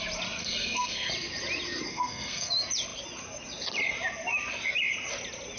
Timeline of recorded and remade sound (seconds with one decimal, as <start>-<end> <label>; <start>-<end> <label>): 0.0-0.4 recorded; 0.4-1.1 remade; 1.1-1.9 recorded; 1.9-2.5 remade; 2.5-5.6 recorded

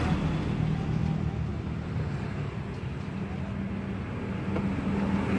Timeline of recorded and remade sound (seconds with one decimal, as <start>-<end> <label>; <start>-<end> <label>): 0.0-5.4 recorded

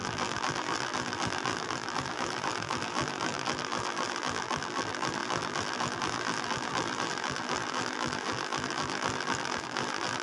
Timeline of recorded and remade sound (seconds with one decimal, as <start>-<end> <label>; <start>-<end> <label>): 0.0-10.2 remade

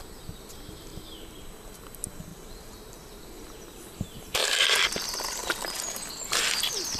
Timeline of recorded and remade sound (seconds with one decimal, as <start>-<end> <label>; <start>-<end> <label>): 0.0-2.3 recorded; 2.3-3.2 remade; 3.2-5.4 recorded; 5.4-6.0 remade; 6.0-7.0 recorded

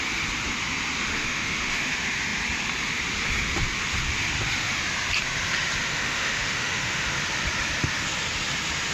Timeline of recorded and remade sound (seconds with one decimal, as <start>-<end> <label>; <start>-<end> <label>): 0.0-1.2 recorded; 1.2-1.9 remade; 1.9-5.9 recorded; 5.9-7.1 remade; 7.1-8.9 recorded

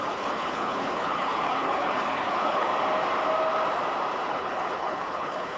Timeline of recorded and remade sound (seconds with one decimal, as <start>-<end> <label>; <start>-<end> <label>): 0.0-2.7 remade; 2.7-4.3 recorded; 4.3-5.6 remade

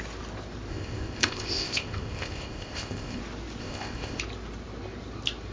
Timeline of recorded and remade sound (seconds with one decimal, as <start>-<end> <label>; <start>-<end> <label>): 0.0-0.7 recorded; 0.7-3.2 remade; 3.2-3.6 recorded; 3.6-4.2 remade; 4.2-5.5 recorded